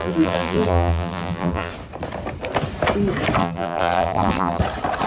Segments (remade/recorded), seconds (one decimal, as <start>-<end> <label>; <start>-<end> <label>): 0.0-1.7 remade; 1.7-3.4 recorded; 3.4-4.6 remade; 4.6-5.1 recorded